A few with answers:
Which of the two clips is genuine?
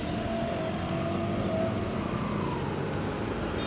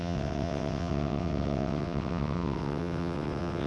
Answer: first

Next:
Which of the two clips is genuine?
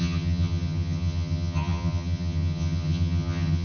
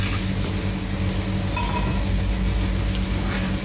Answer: second